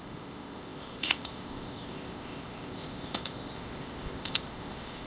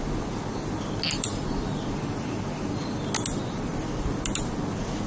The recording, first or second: second